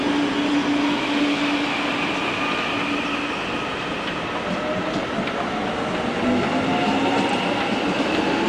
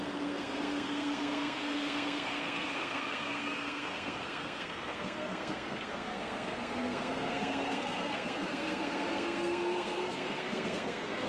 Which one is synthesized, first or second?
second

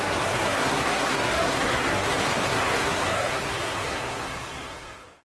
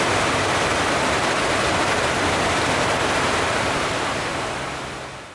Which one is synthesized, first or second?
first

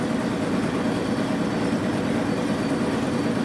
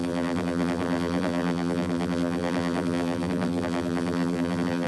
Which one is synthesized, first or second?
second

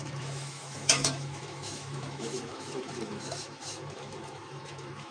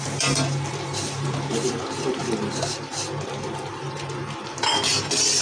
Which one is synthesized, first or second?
first